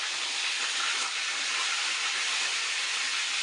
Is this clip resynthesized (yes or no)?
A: no